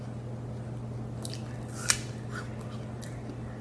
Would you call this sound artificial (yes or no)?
no